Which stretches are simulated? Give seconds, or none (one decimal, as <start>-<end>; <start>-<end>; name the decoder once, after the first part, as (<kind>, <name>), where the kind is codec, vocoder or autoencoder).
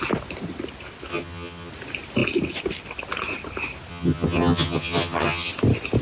1.1-1.7 (vocoder, HiFi-GAN); 3.9-5.5